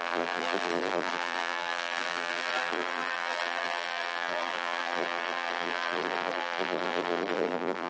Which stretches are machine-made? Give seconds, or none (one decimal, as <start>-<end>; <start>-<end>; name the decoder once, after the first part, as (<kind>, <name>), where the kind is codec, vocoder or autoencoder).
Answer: 0.0-7.9 (vocoder, BigVGAN v2)